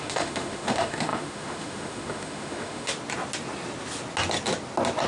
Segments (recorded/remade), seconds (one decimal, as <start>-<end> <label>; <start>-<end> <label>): 0.0-2.9 remade; 2.9-5.1 recorded

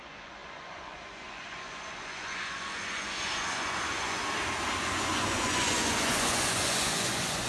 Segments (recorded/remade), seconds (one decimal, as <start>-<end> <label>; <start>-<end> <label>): 0.0-4.2 remade; 4.2-4.8 recorded; 4.8-7.5 remade

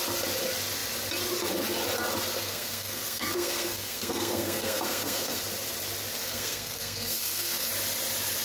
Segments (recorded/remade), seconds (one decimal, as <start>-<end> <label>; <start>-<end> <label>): 0.0-2.4 recorded; 2.4-5.4 remade; 5.4-6.2 recorded; 6.2-7.7 remade; 7.7-8.4 recorded

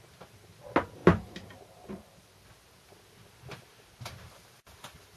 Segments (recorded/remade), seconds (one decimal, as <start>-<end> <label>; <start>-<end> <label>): 0.0-5.2 recorded

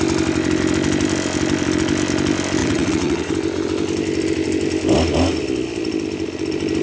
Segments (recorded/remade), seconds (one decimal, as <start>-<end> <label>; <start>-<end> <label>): 0.0-2.6 recorded; 2.6-3.3 remade; 3.3-6.8 recorded

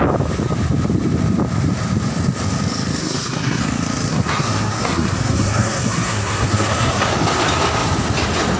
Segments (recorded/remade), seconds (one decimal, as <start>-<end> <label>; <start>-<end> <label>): 0.0-3.0 recorded; 3.0-3.6 remade; 3.6-4.1 recorded; 4.1-7.1 remade; 7.1-8.6 recorded

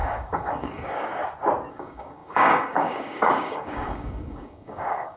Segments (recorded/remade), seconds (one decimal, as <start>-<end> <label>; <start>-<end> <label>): 0.0-1.2 remade; 1.2-1.7 recorded; 1.7-5.2 remade

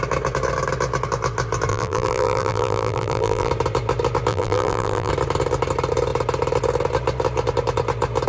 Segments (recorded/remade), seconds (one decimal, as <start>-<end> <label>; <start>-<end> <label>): 0.0-1.7 recorded; 1.7-3.5 remade; 3.5-4.3 recorded; 4.3-5.1 remade; 5.1-8.3 recorded